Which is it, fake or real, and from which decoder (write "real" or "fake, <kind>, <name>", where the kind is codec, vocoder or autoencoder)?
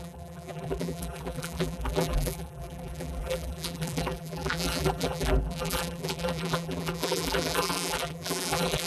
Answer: fake, vocoder, BigVGAN v2